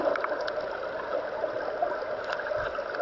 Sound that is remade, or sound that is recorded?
recorded